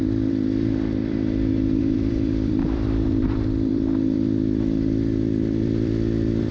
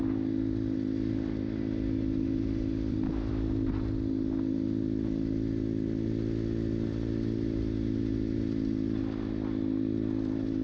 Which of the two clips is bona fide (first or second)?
second